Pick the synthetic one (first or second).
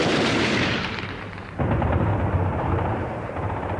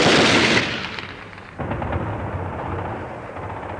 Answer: first